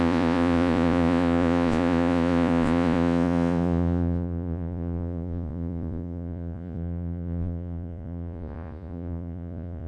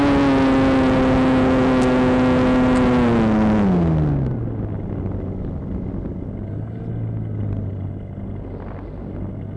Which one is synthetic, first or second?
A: first